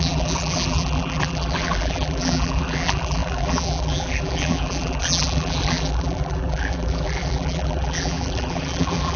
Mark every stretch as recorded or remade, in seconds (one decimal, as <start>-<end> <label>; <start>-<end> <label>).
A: 0.0-9.2 remade